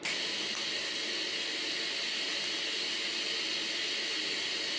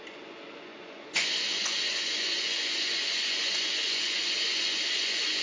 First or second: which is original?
first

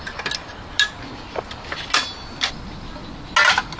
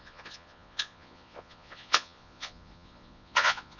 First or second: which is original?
first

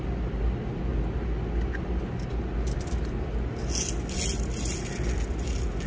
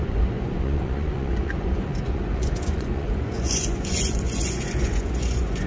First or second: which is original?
first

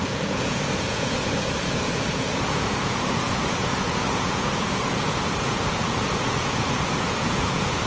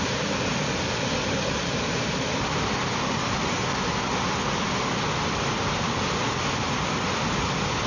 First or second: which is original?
second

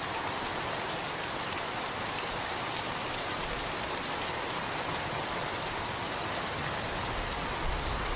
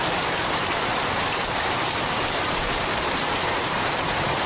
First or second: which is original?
first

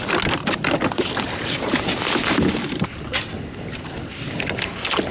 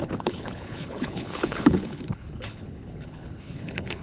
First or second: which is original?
first